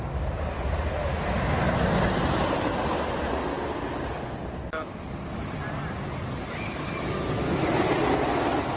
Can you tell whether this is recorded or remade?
recorded